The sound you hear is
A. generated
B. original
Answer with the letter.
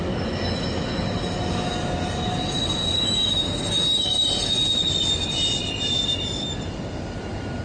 B